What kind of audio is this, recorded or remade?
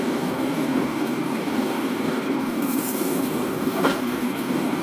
remade